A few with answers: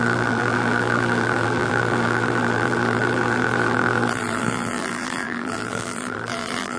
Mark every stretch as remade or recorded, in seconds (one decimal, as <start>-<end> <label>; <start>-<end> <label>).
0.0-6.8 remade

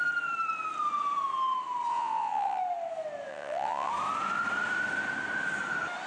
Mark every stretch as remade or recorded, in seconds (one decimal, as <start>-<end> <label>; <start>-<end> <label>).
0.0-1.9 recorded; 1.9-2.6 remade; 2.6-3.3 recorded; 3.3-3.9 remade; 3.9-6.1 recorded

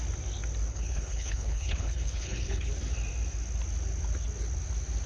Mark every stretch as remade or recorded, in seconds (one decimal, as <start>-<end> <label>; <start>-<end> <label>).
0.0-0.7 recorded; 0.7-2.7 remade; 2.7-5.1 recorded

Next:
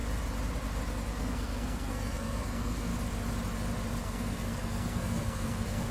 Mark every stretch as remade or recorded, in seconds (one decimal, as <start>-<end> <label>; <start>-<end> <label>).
0.0-1.1 recorded; 1.1-2.9 remade; 2.9-4.0 recorded; 4.0-5.9 remade

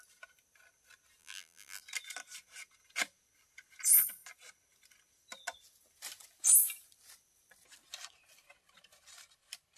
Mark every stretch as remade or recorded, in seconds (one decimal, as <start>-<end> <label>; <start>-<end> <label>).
0.0-1.2 recorded; 1.2-1.8 remade; 1.8-9.8 recorded

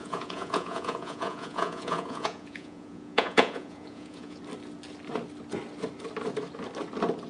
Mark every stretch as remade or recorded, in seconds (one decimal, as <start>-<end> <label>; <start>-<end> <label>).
0.0-4.4 remade; 4.4-7.3 recorded

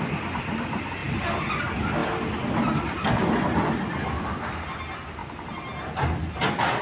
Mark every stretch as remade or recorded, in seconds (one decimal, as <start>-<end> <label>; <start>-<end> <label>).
0.0-6.8 recorded